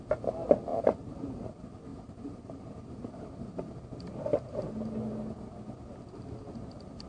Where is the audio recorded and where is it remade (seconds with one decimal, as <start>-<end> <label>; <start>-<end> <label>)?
0.0-0.7 recorded; 0.7-1.5 remade; 1.5-1.9 recorded; 1.9-3.7 remade; 3.7-7.1 recorded